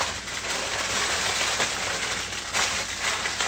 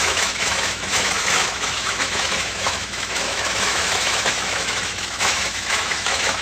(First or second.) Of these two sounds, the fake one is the second